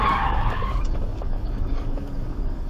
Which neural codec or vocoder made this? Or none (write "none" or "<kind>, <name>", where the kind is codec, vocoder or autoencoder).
codec, DAC